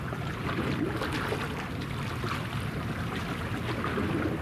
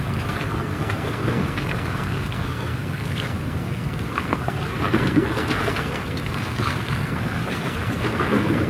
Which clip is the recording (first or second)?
first